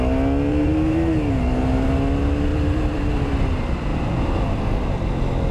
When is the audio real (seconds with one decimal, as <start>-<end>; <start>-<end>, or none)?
0.0-0.5; 1.3-2.5; 3.3-3.9; 4.4-5.5